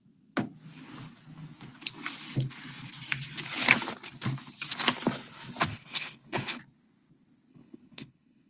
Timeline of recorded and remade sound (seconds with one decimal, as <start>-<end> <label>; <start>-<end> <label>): 0.0-5.7 recorded; 5.7-6.6 remade; 6.6-7.5 recorded; 7.5-8.5 remade